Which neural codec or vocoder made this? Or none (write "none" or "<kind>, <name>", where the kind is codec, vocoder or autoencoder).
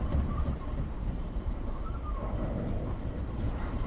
vocoder, BigVGAN v2